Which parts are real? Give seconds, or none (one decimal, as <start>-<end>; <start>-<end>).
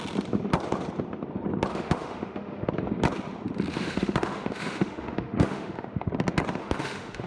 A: 0.0-1.7; 2.7-3.7; 6.1-6.6